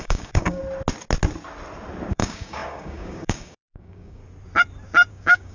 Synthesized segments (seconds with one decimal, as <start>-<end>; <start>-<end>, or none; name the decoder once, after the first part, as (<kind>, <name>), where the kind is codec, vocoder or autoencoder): 0.0-0.6 (codec, DAC); 2.1-4.2; 5.1-5.5